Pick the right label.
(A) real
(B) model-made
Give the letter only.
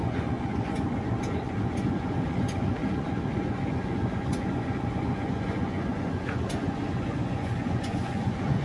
B